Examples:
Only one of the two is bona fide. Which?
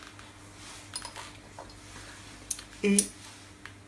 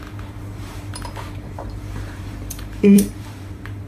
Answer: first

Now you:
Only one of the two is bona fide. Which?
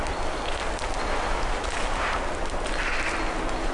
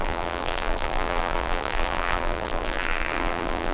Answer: first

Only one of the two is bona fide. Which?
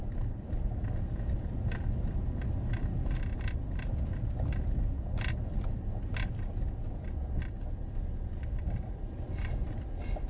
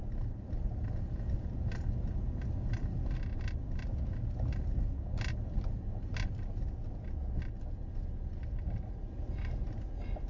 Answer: second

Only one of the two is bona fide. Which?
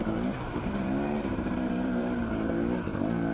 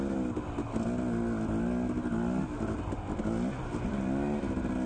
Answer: second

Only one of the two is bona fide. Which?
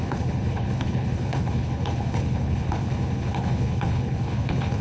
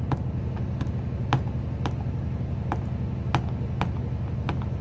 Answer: second